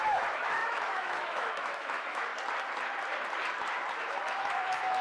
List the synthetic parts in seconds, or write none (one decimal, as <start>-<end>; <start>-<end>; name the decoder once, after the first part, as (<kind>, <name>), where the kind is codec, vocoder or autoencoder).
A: 0.0-2.3 (autoencoder, DAC-VAE); 4.1-5.0

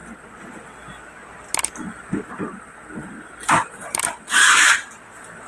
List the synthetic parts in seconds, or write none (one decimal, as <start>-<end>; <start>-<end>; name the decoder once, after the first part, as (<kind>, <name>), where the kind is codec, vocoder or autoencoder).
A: none

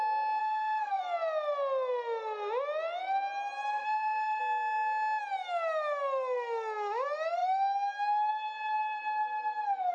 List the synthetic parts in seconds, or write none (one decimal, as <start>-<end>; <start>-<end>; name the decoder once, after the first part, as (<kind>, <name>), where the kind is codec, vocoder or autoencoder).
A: 0.4-1.0 (codec, SNAC); 3.7-4.4

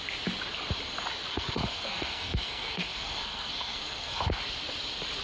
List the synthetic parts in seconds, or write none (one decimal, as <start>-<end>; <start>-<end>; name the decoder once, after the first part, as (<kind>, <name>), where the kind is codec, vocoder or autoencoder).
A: 1.3-4.4 (codec, SNAC)

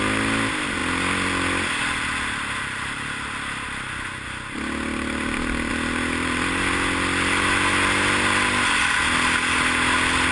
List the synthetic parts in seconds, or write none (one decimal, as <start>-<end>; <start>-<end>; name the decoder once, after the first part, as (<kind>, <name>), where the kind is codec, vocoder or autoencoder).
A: none

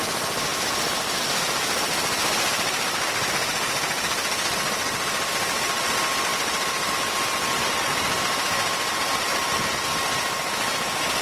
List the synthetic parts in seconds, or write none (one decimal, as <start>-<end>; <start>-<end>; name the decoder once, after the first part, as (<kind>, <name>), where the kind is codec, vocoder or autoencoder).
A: 0.5-3.3 (vocoder, BigVGAN v2); 6.3-6.9

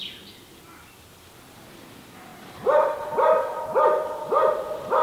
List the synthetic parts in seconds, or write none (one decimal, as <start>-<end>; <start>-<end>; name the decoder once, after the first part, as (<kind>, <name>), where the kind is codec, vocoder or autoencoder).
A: 2.3-3.6 (vocoder, BigVGAN v2)

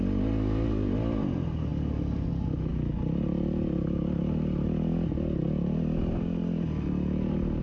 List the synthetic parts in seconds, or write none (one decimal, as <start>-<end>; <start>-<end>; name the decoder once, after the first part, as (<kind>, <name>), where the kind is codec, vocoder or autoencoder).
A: none